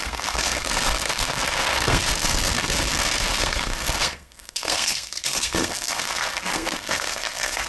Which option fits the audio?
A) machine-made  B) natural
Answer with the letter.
A